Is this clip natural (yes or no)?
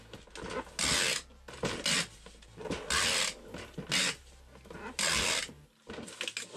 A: yes